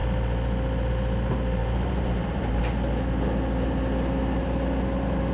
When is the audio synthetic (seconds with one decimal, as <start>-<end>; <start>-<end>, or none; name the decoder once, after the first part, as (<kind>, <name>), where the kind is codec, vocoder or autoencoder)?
1.6-2.6 (vocoder, BigVGAN v2)